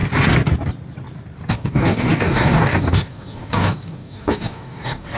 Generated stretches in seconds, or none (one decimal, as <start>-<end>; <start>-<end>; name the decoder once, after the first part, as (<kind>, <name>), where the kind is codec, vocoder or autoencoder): 1.5-5.2 (codec, DAC)